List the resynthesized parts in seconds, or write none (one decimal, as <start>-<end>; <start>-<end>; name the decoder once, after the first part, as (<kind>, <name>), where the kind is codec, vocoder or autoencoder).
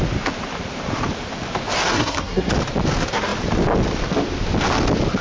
1.9-2.5 (codec, SNAC)